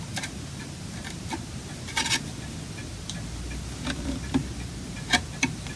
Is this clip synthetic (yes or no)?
no